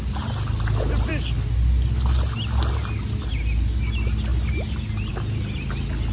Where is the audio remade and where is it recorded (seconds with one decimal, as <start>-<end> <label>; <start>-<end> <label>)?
0.0-6.1 recorded

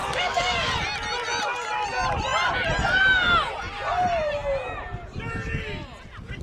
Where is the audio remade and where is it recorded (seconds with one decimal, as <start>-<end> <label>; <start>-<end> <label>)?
0.0-0.7 remade; 0.7-6.4 recorded

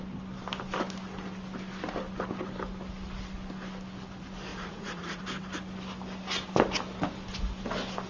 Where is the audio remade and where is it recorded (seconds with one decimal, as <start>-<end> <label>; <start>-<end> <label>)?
0.0-4.5 recorded; 4.5-5.2 remade; 5.2-8.1 recorded

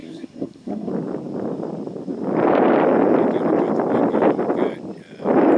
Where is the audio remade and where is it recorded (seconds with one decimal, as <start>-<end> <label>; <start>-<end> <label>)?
0.0-0.9 remade; 0.9-5.6 recorded